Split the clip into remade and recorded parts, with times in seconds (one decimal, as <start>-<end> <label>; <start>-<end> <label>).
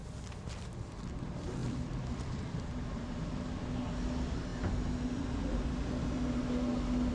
0.0-1.0 remade; 1.0-1.6 recorded; 1.6-3.0 remade; 3.0-7.1 recorded